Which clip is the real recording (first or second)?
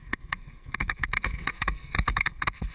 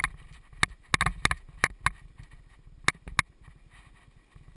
second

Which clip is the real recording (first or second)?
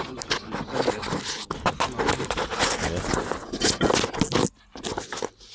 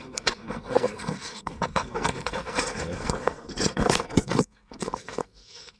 first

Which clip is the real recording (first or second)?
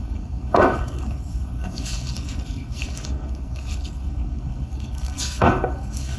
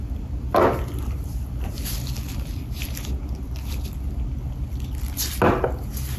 second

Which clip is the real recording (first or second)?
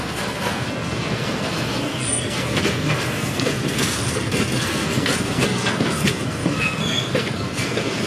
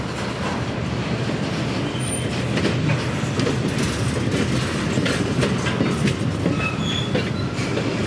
second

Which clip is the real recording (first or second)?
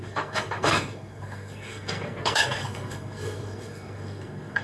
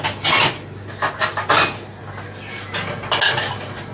second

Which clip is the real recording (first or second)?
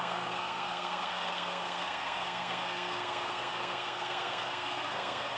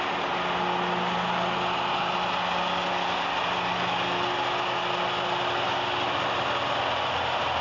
second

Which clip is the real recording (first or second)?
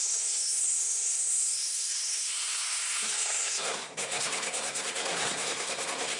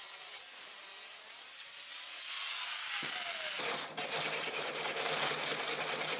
second